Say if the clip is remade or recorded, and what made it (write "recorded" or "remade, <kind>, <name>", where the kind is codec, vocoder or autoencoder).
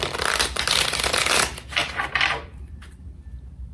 remade, vocoder, BigVGAN v2